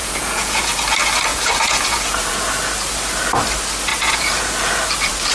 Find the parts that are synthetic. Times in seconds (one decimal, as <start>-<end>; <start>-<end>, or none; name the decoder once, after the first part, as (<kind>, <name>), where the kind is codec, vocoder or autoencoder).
0.0-0.8 (vocoder, Vocos); 1.3-2.5; 3.9-4.7